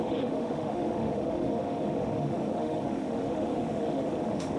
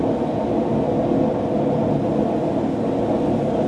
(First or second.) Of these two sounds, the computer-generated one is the first